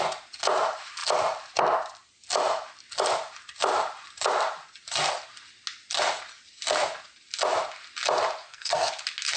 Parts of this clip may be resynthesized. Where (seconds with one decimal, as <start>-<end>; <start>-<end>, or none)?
8.4-8.9